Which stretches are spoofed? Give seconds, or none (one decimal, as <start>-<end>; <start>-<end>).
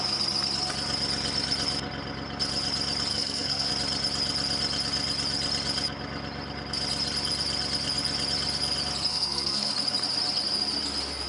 3.1-3.7; 9.1-9.7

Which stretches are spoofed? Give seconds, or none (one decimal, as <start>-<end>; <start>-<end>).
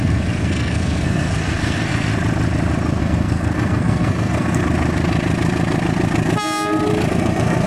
0.0-2.1; 3.0-4.6; 7.1-7.7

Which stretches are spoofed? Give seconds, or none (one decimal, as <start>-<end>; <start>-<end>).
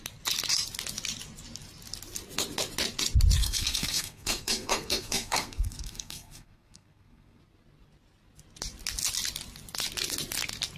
3.4-7.4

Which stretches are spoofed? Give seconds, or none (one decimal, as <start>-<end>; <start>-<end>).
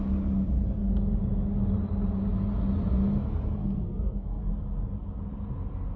3.6-4.5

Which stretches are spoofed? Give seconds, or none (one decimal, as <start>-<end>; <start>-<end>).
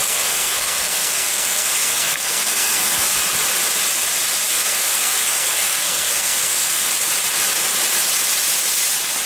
0.0-3.2; 4.5-6.9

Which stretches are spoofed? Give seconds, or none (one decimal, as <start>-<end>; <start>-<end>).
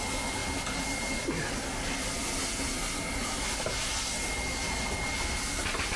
none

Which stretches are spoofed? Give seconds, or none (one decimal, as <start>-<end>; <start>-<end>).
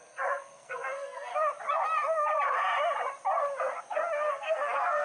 0.0-1.3; 4.3-5.0